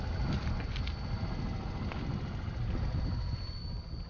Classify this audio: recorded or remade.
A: recorded